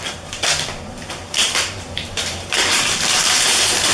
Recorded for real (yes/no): no